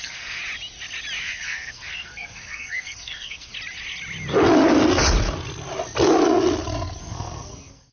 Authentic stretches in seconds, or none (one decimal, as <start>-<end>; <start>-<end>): 0.4-1.2; 3.5-7.0